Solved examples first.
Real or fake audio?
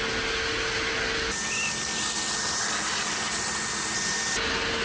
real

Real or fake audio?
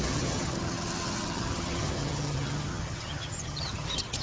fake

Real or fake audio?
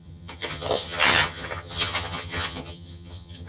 fake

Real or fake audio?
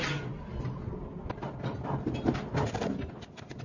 real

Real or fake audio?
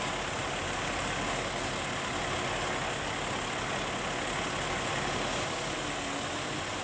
real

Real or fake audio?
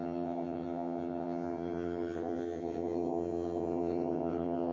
fake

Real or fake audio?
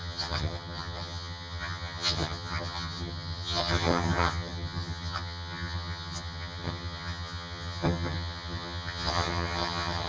fake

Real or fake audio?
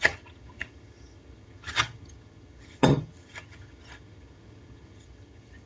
fake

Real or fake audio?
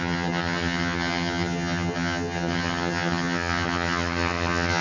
fake